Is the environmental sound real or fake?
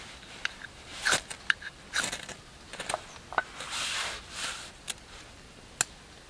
real